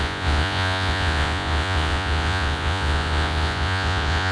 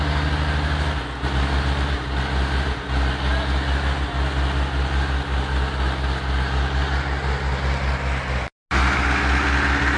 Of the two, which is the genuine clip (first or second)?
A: second